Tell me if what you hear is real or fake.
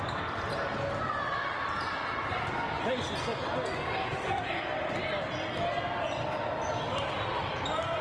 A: real